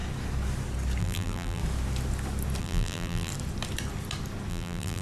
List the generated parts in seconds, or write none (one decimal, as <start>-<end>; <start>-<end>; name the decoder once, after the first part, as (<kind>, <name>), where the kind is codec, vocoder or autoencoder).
1.0-1.6 (vocoder, BigVGAN v2); 2.6-3.3; 4.5-5.0